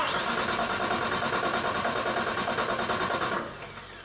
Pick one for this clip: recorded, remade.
recorded